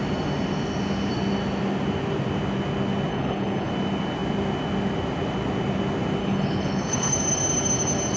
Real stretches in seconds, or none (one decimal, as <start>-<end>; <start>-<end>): 0.0-3.1; 3.7-6.2; 7.2-8.2